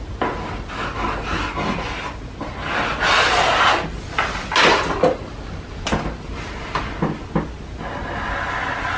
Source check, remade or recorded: recorded